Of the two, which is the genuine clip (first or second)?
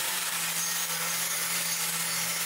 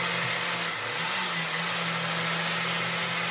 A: second